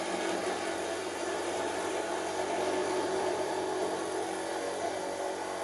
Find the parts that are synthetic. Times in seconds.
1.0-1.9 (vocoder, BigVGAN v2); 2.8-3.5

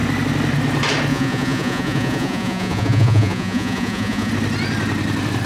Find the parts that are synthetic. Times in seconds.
1.1-4.3 (vocoder, Vocos)

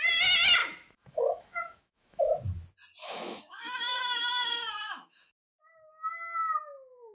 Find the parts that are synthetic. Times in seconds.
0.6-2.2 (autoencoder, DAC-VAE); 3.0-5.9

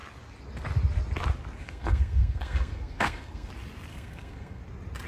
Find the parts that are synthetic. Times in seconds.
1.6-3.5 (codec, SNAC); 3.9-4.6

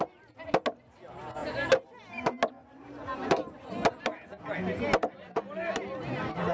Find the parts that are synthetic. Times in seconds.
none

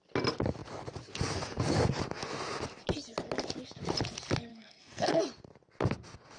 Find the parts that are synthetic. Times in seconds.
4.5-5.2 (codec, SNAC)

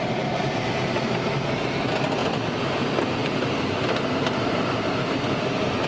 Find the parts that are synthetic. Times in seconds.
2.2-2.8 (vocoder, BigVGAN v2); 3.2-5.9